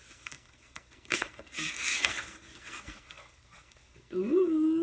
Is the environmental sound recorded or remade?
remade